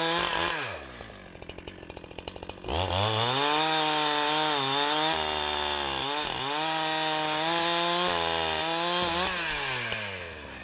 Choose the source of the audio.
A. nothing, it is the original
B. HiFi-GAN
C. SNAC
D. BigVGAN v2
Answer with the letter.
A